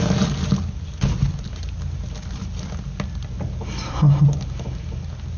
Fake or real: real